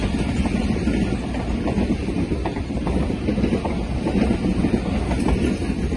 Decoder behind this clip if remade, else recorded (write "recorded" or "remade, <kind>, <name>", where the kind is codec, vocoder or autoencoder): recorded